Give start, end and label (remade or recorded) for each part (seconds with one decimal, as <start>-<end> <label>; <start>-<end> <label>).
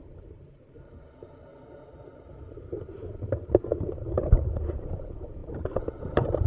0.0-1.5 remade; 1.5-2.7 recorded; 2.7-6.5 remade